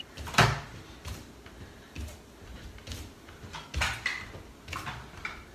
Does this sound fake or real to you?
real